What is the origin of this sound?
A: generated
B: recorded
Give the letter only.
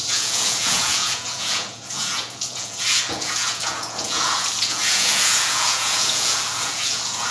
A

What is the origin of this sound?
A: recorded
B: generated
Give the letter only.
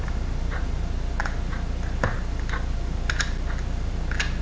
A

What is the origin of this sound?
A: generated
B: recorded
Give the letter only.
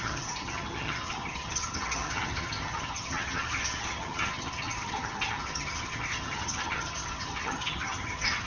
A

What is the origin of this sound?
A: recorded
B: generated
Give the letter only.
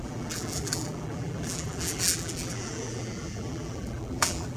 B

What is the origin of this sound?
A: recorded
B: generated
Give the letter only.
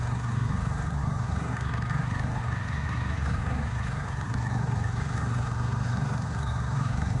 B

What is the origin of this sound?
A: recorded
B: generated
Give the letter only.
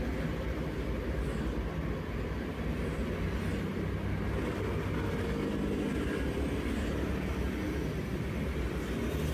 A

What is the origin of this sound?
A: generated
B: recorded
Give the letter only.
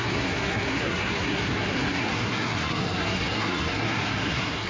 A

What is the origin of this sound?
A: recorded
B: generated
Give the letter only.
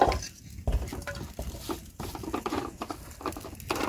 A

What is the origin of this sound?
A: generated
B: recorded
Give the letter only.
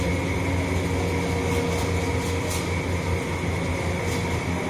B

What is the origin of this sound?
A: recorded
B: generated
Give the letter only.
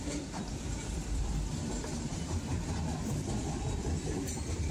B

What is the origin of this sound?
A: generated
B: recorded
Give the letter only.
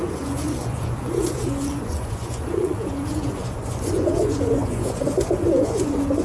A